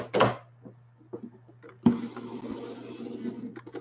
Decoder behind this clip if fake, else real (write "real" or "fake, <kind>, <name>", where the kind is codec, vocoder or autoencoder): real